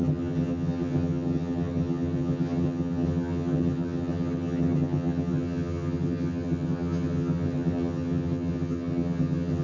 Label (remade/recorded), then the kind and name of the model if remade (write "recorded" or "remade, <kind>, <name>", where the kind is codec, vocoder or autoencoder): remade, vocoder, HiFi-GAN